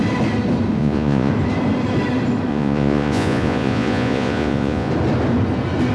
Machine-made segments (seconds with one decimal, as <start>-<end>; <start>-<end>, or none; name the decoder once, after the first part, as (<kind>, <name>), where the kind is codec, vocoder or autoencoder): 0.8-1.3 (vocoder, Vocos); 2.5-4.9